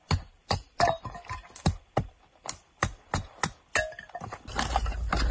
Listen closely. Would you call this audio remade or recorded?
recorded